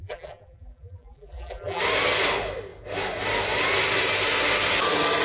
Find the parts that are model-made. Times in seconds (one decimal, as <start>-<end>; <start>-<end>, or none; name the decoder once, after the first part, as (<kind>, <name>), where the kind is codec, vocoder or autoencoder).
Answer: 0.0-1.8 (vocoder, BigVGAN v2)